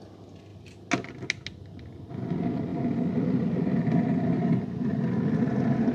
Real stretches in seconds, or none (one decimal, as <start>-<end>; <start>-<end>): 0.0-5.9